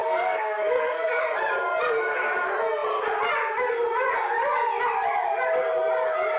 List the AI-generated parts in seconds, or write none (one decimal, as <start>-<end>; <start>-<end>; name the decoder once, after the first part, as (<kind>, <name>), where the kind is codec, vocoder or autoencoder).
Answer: 0.0-1.2 (codec, SNAC)